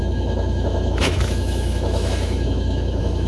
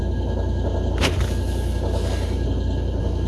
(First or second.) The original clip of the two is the second